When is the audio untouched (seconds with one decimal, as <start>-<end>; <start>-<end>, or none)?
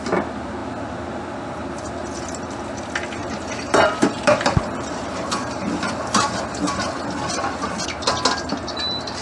0.0-3.2; 5.6-9.2